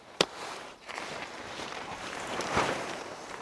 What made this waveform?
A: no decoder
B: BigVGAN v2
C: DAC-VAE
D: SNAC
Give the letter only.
B